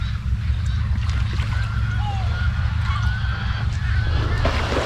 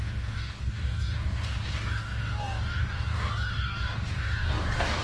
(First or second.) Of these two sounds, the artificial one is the second